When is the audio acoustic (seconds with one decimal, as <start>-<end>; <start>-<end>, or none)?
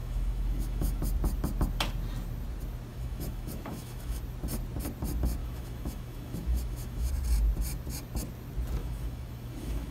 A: 1.0-2.9; 4.2-5.4; 7.1-8.8